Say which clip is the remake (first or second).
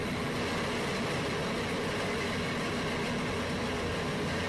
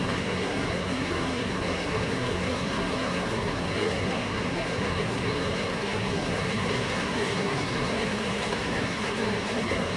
second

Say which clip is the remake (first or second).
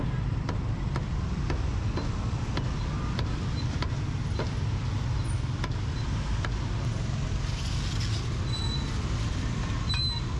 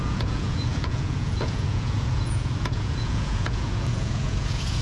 second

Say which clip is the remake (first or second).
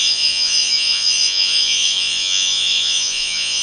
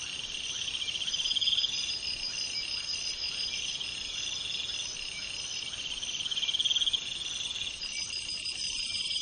first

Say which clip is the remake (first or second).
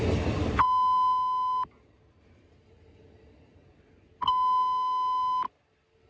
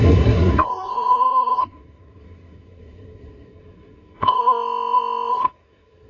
second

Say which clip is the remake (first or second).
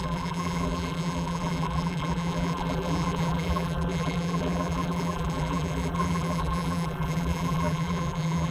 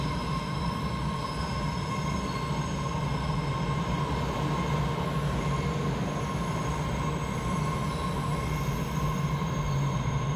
first